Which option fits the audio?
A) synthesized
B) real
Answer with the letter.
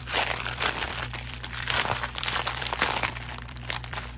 A